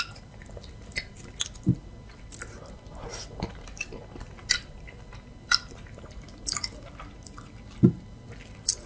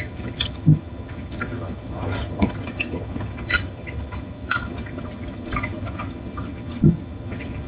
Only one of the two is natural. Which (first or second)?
first